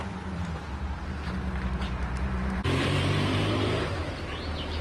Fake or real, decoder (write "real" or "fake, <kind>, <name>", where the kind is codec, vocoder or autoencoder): fake, vocoder, BigVGAN v2